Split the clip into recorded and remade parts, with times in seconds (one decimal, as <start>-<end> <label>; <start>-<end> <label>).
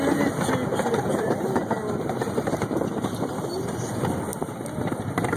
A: 0.0-0.7 recorded; 0.7-3.9 remade; 3.9-5.4 recorded